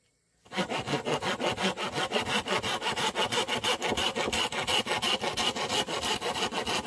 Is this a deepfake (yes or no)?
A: no